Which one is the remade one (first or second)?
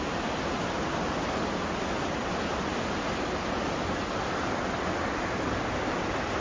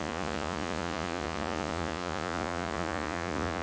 second